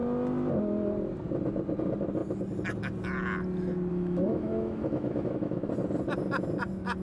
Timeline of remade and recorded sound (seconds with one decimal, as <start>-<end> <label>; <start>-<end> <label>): 0.0-3.9 recorded; 3.9-5.7 remade; 5.7-7.0 recorded